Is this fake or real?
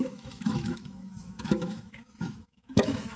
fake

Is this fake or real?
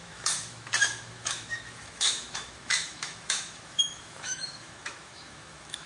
fake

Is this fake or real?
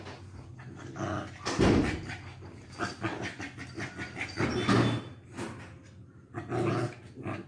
real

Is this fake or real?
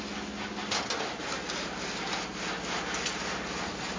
real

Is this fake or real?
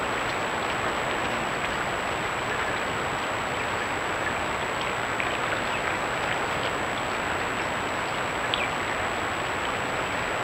real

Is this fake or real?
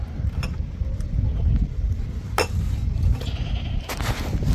real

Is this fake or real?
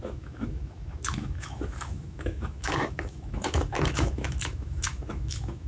fake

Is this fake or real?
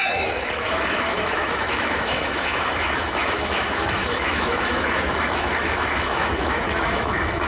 fake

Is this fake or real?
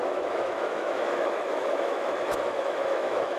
fake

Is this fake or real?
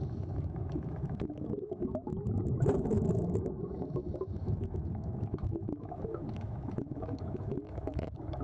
fake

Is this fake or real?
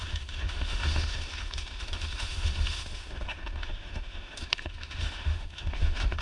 fake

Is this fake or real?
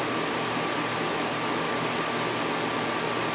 real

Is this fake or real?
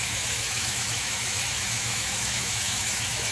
fake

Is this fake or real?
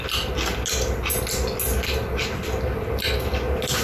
real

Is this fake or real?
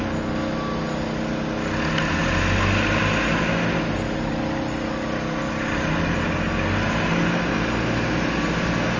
real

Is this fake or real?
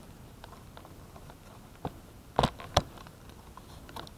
real